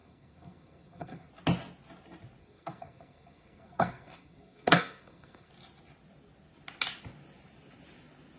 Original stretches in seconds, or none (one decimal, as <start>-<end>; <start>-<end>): 1.3-2.4; 5.5-8.4